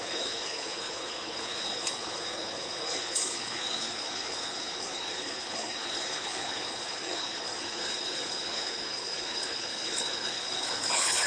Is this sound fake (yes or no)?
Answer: yes